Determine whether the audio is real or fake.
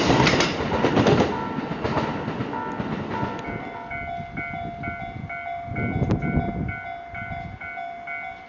real